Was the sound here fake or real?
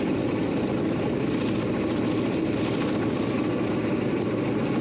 real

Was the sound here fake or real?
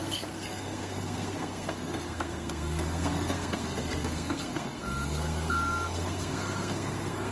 fake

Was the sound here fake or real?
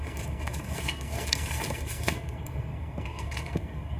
fake